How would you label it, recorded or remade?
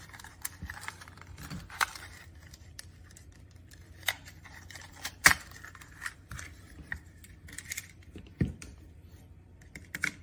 remade